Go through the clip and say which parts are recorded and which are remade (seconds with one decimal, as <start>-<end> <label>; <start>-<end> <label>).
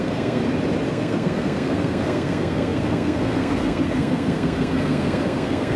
0.0-0.4 remade; 0.4-0.9 recorded; 0.9-5.8 remade